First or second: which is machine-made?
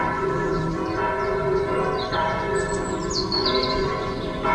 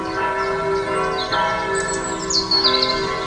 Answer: first